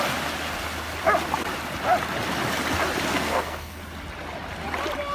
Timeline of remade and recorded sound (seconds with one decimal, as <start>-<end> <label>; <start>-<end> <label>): 0.0-3.1 recorded; 3.1-3.8 remade; 3.8-5.1 recorded